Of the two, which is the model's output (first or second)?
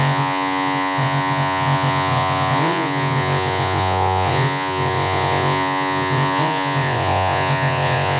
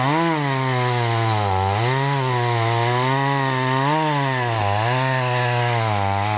first